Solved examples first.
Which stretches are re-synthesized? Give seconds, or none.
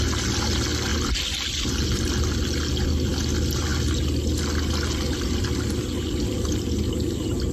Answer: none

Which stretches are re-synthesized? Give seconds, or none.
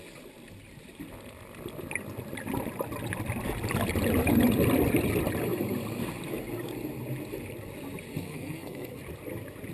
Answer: 8.2-9.0 (codec, SNAC)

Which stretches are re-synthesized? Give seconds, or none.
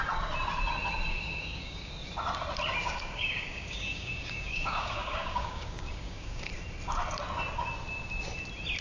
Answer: 1.1-1.9 (codec, DAC); 2.8-6.5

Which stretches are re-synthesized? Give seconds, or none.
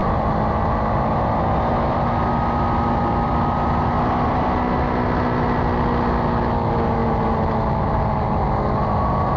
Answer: none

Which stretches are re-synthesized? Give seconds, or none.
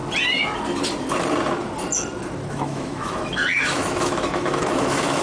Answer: 2.5-5.2 (autoencoder, DAC-VAE)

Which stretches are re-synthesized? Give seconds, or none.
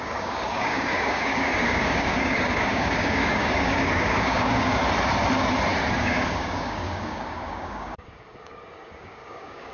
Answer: 0.0-4.8 (codec, DAC); 5.9-9.7